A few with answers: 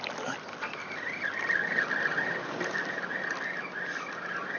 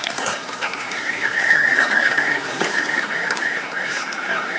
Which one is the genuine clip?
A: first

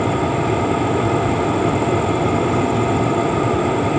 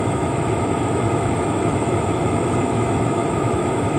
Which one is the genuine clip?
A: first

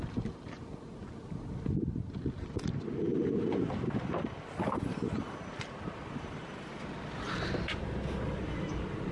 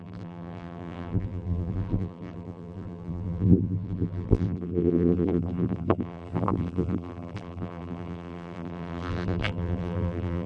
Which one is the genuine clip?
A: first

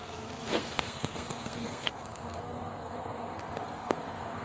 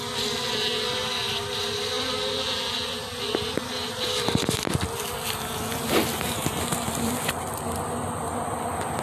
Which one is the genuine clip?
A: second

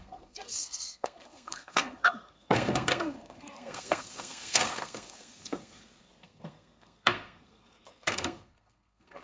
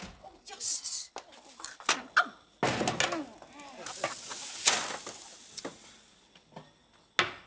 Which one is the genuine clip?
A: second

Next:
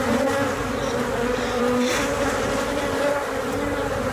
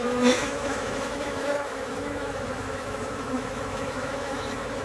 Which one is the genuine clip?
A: first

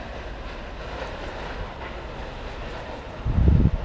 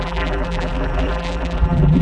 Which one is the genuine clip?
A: first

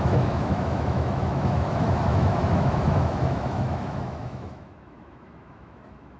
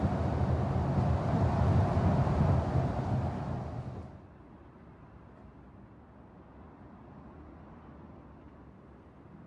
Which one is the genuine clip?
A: second